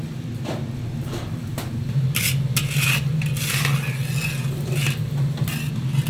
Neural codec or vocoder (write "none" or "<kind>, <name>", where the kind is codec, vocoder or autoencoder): none